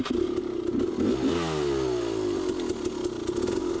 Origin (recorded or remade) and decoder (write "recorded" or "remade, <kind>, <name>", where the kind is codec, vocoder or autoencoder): recorded